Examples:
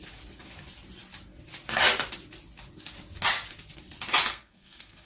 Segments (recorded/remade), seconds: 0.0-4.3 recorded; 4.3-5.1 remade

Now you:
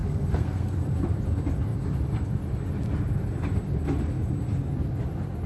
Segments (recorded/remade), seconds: 0.0-0.8 remade; 0.8-5.5 recorded